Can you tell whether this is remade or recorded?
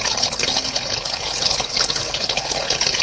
remade